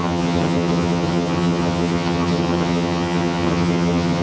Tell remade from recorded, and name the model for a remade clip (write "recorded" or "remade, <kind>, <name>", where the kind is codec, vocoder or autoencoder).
remade, vocoder, HiFi-GAN